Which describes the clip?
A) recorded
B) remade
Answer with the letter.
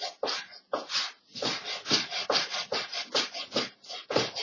A